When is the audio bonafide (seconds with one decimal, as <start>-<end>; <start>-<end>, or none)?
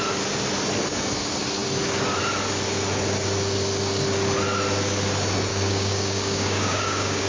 0.0-5.5